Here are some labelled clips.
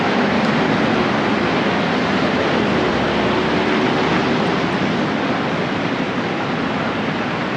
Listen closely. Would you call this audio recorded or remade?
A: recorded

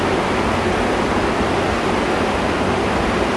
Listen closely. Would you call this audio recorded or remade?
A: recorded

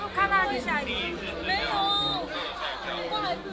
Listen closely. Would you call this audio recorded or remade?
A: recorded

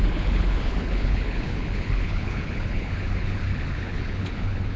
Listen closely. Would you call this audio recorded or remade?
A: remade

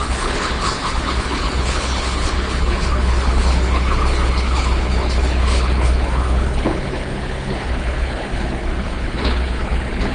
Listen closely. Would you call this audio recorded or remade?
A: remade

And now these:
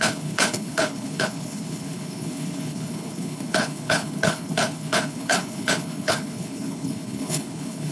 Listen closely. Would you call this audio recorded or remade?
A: remade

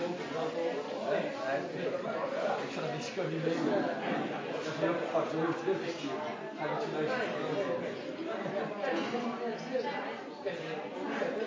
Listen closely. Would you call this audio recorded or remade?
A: recorded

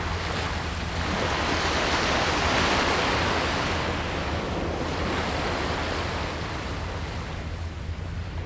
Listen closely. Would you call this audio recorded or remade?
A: recorded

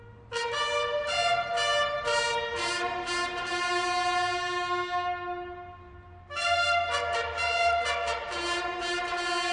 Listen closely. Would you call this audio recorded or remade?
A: recorded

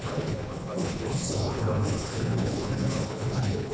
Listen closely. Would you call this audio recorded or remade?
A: remade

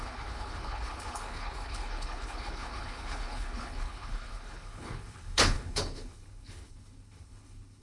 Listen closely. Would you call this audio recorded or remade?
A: remade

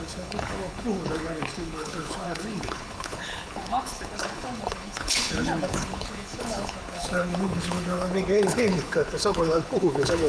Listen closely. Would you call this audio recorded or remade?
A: remade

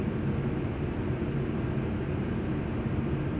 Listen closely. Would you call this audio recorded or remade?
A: recorded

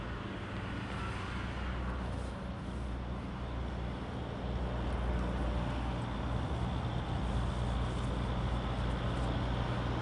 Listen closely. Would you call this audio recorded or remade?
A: recorded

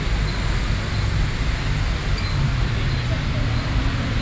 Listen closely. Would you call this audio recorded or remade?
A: recorded